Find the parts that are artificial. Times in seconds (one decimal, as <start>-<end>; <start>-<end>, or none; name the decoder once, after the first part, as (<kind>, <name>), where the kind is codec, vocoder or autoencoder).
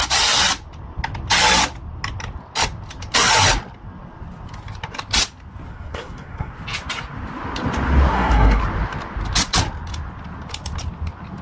5.7-6.5 (codec, SNAC); 8.1-8.6